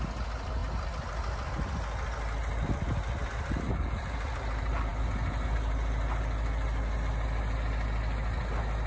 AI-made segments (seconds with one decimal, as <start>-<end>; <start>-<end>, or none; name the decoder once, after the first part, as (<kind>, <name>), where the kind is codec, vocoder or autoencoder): none